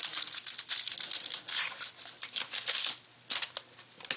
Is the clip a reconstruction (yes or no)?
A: no